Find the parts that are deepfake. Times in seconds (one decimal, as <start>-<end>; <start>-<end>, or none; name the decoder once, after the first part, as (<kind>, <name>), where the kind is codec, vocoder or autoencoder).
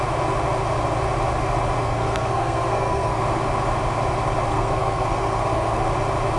1.8-3.2 (codec, SNAC); 4.5-5.8